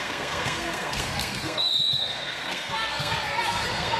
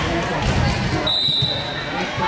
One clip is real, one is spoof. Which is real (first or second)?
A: second